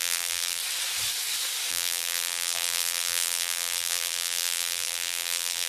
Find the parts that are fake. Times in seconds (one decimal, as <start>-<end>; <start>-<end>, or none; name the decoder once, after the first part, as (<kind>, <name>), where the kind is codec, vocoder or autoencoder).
0.0-0.6 (vocoder, BigVGAN v2); 1.7-5.7